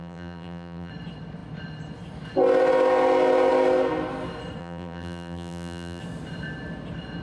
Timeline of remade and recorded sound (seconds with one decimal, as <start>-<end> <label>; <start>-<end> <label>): 0.0-0.9 remade; 0.9-4.6 recorded; 4.6-6.0 remade; 6.0-7.2 recorded